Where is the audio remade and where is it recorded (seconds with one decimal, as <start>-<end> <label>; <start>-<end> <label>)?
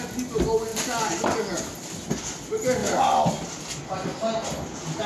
0.0-2.8 recorded; 2.8-3.6 remade; 3.6-5.1 recorded